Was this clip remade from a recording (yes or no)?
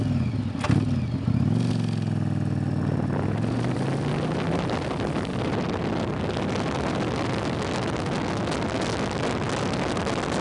no